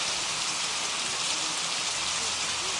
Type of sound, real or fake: real